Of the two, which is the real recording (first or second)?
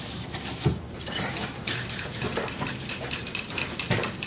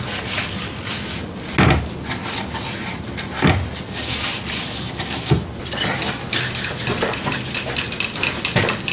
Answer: second